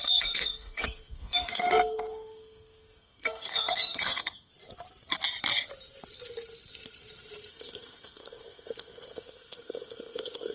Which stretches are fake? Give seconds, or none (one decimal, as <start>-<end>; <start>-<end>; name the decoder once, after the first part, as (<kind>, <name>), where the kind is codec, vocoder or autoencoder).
0.0-4.5 (codec, SNAC); 7.5-10.5